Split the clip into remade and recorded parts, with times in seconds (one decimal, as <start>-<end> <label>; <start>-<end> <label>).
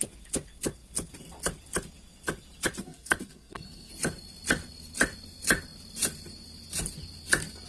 0.0-2.8 recorded; 2.8-3.9 remade; 3.9-7.7 recorded